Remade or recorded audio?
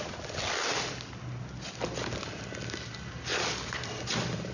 recorded